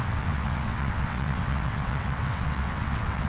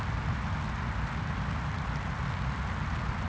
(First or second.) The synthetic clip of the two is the first